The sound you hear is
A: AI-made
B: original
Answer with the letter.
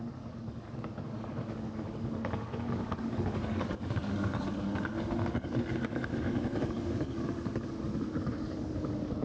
A